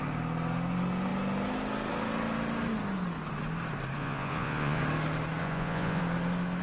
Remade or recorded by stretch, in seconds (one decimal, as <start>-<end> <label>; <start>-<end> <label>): 0.0-4.0 recorded; 4.0-4.8 remade; 4.8-5.4 recorded; 5.4-6.0 remade; 6.0-6.6 recorded